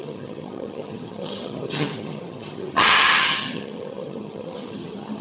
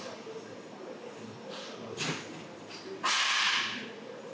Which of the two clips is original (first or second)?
second